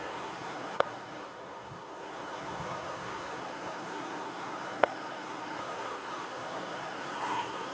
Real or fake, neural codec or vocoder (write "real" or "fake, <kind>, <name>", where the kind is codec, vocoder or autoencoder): fake, codec, SNAC